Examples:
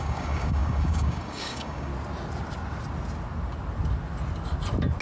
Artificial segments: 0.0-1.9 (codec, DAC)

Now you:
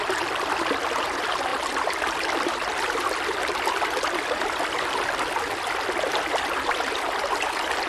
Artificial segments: none

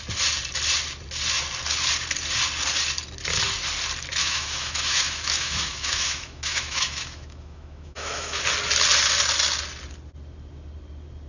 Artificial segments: 4.2-8.4 (autoencoder, DAC-VAE)

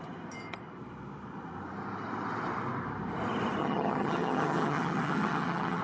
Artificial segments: 3.6-5.8 (vocoder, HiFi-GAN)

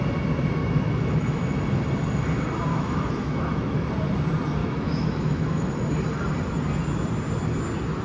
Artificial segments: 0.6-1.6 (autoencoder, DAC-VAE); 2.7-3.9; 4.6-5.7